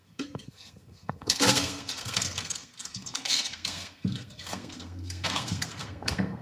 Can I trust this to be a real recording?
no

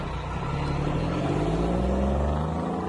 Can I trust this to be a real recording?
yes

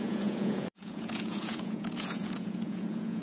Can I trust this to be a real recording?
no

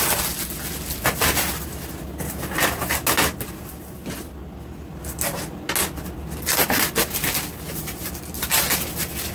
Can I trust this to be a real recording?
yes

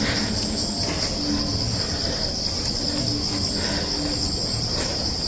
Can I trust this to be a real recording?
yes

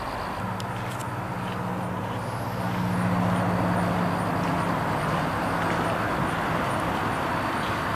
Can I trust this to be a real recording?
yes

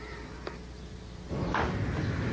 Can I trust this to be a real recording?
yes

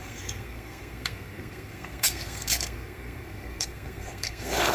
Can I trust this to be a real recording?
no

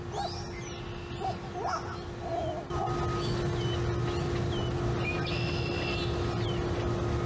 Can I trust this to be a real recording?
yes